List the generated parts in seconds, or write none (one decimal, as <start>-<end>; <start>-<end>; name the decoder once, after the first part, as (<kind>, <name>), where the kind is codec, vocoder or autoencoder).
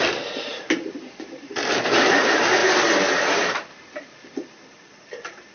0.5-2.1 (vocoder, BigVGAN v2)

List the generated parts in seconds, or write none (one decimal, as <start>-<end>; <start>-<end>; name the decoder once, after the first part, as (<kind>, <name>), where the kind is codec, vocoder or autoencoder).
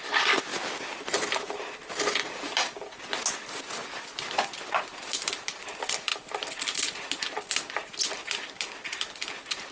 none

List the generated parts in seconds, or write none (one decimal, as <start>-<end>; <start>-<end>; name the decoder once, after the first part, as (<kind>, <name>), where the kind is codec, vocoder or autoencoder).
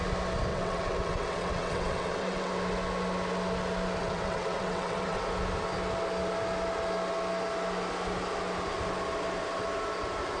0.5-2.5 (vocoder, WaveNeXt); 4.0-5.2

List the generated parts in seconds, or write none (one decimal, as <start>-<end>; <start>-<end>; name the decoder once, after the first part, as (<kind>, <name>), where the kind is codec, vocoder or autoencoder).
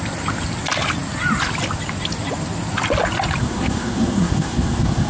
3.4-5.1 (codec, SNAC)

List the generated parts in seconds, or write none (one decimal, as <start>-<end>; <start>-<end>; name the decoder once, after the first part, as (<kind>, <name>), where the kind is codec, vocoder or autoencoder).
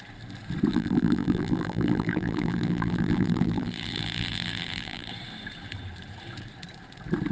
0.7-5.1 (vocoder, BigVGAN v2)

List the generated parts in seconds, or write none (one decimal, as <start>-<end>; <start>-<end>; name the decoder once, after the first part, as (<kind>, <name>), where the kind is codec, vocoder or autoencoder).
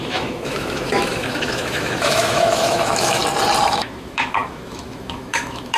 0.0-3.2 (autoencoder, DAC-VAE); 3.7-5.8